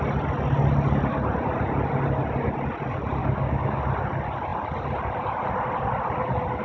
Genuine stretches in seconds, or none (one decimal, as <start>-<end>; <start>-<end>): 0.0-3.2; 3.8-6.6